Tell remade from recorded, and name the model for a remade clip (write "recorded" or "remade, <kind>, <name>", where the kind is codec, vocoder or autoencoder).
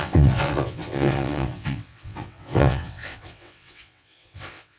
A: remade, vocoder, WaveNeXt